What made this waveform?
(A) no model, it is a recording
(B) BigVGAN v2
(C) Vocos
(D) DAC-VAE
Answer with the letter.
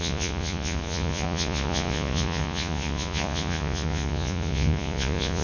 C